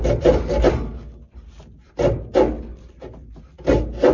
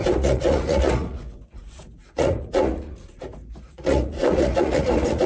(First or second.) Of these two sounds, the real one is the first